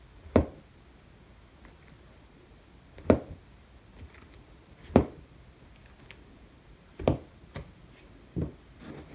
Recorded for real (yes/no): yes